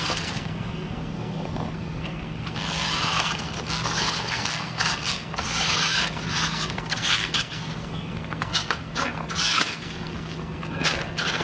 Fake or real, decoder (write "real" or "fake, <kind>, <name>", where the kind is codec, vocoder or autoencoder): fake, codec, SNAC